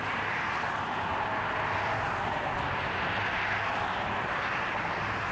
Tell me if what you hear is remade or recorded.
recorded